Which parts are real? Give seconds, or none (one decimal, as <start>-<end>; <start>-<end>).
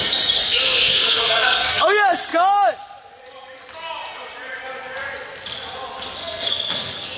0.0-0.4; 1.8-6.2